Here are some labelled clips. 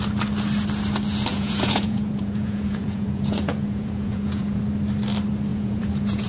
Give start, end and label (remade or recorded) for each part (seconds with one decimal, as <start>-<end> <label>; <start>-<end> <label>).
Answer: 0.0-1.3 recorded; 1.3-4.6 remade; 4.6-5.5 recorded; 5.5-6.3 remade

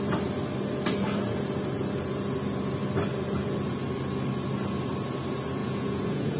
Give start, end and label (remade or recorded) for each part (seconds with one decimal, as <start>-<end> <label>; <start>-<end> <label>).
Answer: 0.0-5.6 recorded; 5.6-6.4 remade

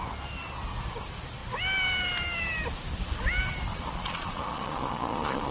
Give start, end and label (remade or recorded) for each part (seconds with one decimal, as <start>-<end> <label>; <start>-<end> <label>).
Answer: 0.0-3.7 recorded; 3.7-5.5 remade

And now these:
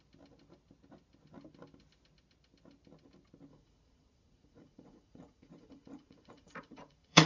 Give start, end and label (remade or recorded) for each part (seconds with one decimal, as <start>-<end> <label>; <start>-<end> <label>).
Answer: 0.0-3.5 recorded; 3.5-7.3 remade

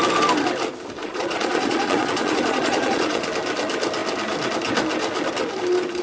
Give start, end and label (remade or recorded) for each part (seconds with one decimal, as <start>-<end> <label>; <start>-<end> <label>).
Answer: 0.0-1.0 recorded; 1.0-3.3 remade; 3.3-6.0 recorded

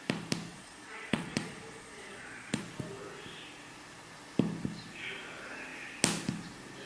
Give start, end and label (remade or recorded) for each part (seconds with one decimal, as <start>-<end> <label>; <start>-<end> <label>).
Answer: 0.0-0.5 recorded; 0.5-2.6 remade; 2.6-6.9 recorded